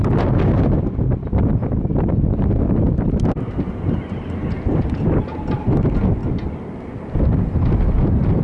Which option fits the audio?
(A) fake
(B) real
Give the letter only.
B